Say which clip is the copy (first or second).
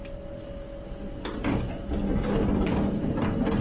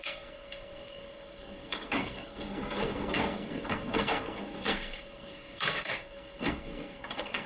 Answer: second